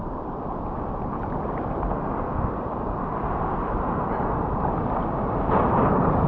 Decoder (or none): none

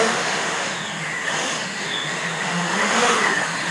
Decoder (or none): autoencoder, DAC-VAE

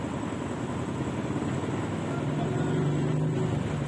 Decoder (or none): none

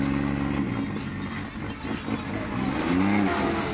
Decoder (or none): none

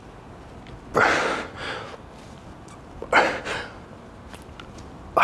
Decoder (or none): none